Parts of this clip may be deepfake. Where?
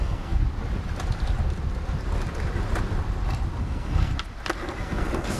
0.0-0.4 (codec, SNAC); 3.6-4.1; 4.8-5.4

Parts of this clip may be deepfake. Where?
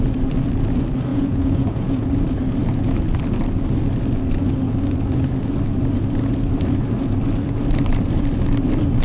1.1-2.1 (vocoder, Vocos)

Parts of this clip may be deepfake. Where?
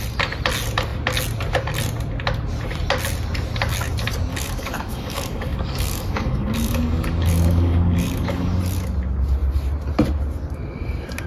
4.3-8.6 (codec, DAC)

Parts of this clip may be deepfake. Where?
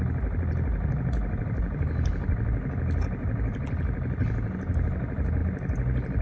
none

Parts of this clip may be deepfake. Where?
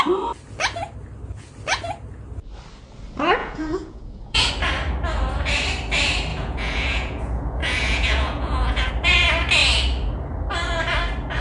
3.4-4.5 (vocoder, Vocos); 6.3-8.9